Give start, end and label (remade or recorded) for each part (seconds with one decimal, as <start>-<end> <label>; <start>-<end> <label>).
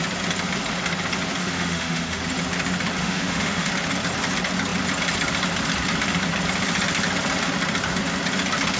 0.0-1.4 recorded; 1.4-2.2 remade; 2.2-3.0 recorded; 3.0-3.7 remade; 3.7-8.8 recorded